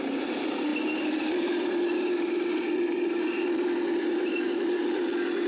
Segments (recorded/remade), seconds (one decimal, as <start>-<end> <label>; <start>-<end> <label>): 0.0-5.0 remade; 5.0-5.5 recorded

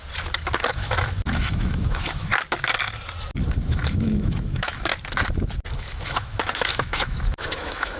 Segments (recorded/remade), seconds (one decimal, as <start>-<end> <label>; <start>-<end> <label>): 0.0-0.7 recorded; 0.7-2.3 remade; 2.3-3.5 recorded; 3.5-4.9 remade; 4.9-5.8 recorded; 5.8-8.0 remade

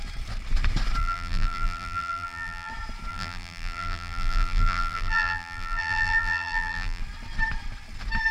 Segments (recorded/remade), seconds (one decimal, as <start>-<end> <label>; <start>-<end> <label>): 0.0-1.0 recorded; 1.0-2.7 remade; 2.7-3.1 recorded; 3.1-7.0 remade; 7.0-8.3 recorded